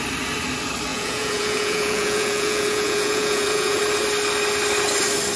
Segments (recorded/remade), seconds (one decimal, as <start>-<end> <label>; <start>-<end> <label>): 0.0-0.9 recorded; 0.9-3.8 remade; 3.8-5.4 recorded